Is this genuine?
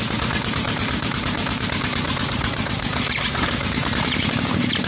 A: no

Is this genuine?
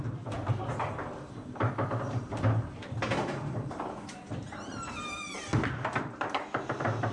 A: no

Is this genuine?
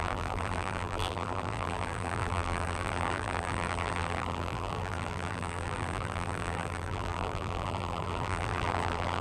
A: no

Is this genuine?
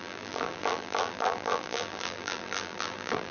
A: no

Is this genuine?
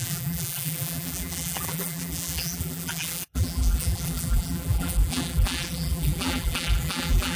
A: no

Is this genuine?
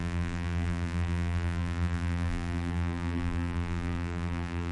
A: no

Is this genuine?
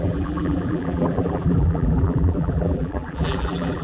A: no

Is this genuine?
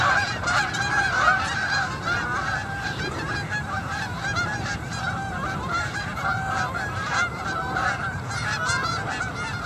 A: no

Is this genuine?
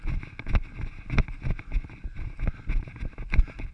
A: yes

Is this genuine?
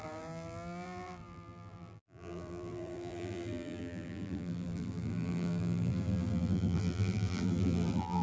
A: no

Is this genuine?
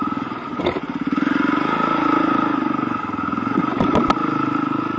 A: yes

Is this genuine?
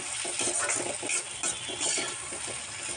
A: yes